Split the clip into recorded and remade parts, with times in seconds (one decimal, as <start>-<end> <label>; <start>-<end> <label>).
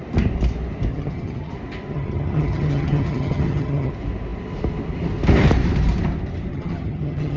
0.0-0.9 recorded; 0.9-1.5 remade; 1.5-1.9 recorded; 1.9-3.9 remade; 3.9-6.5 recorded; 6.5-7.4 remade